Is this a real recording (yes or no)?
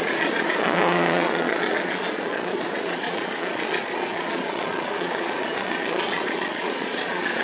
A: no